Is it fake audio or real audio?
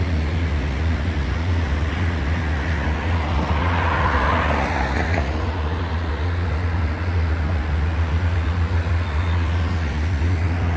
fake